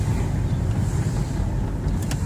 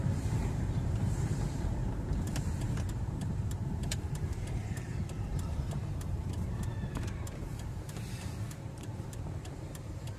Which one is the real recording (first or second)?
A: first